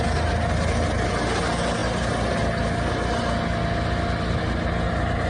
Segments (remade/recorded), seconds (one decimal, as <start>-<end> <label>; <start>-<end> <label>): 0.0-5.3 recorded